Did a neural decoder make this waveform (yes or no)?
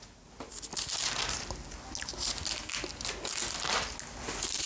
no